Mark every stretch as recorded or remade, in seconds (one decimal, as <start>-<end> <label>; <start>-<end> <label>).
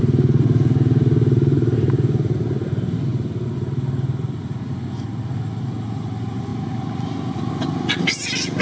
0.0-8.6 recorded